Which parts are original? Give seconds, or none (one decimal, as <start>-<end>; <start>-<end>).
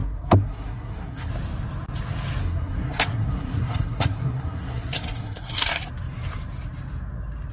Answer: 1.3-2.4; 5.8-7.5